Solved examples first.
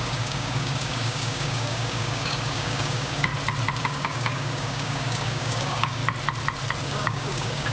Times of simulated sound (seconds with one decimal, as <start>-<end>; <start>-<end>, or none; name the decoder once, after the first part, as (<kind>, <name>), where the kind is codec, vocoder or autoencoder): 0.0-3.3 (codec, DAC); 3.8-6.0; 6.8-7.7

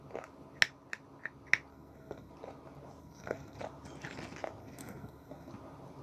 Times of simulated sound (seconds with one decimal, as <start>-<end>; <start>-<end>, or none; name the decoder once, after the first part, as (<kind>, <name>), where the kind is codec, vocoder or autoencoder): 1.7-2.3 (codec, SNAC); 3.0-3.6; 4.6-5.5

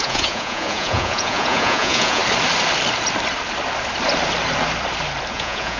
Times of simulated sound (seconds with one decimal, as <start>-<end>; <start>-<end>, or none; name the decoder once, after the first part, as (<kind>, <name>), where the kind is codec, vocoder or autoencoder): 0.0-2.2 (vocoder, Vocos); 5.3-5.8